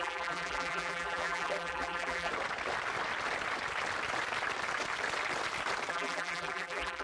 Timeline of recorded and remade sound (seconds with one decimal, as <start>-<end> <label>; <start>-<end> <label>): 0.0-2.3 remade; 2.3-5.9 recorded; 5.9-7.0 remade